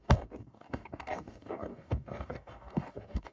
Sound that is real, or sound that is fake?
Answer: fake